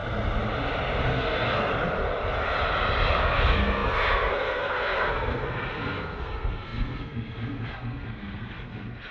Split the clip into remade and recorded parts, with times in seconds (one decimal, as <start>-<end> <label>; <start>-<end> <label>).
0.0-1.0 recorded; 1.0-1.7 remade; 1.7-3.2 recorded; 3.2-9.1 remade